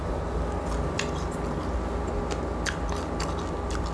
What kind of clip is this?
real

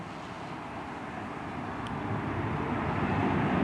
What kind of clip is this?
real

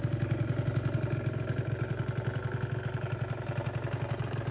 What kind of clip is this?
real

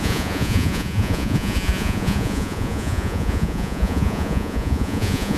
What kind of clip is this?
fake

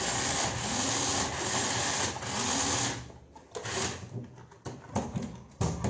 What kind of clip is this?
real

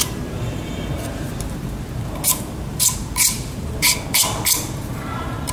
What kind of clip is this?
fake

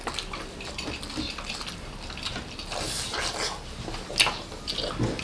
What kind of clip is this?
real